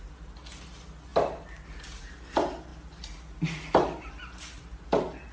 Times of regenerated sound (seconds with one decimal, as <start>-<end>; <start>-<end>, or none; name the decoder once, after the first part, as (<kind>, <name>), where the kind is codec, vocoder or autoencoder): none